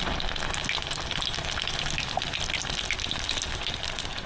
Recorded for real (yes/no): yes